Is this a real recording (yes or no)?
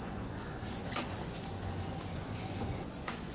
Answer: no